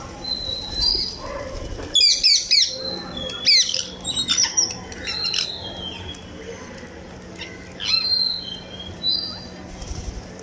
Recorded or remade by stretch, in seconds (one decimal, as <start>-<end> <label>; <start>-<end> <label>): 0.0-10.4 recorded